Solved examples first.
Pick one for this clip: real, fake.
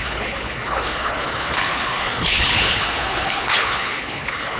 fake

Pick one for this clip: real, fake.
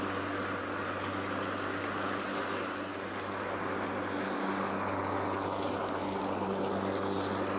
real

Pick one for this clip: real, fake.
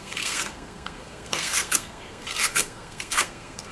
fake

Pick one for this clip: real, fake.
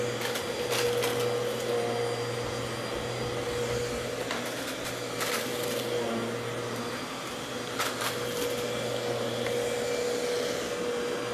real